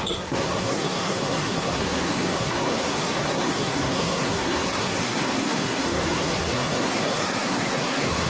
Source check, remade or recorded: remade